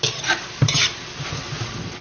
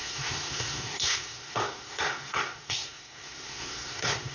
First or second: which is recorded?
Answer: first